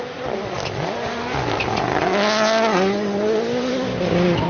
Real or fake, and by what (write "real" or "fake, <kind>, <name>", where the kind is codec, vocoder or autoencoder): real